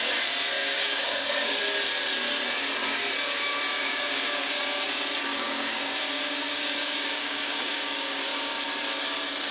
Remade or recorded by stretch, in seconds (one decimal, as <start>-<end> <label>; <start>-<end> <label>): 0.0-0.6 recorded; 0.6-1.6 remade; 1.6-3.8 recorded; 3.8-4.6 remade; 4.6-5.3 recorded; 5.3-8.2 remade; 8.2-9.5 recorded